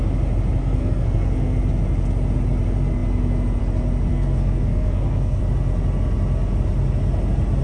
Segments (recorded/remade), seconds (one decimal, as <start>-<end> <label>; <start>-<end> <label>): 0.0-0.6 recorded; 0.6-1.6 remade; 1.6-4.1 recorded; 4.1-5.4 remade; 5.4-7.6 recorded